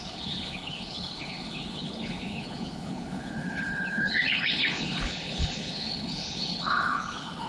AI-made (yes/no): yes